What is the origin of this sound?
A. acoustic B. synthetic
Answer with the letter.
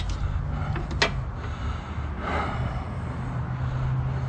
A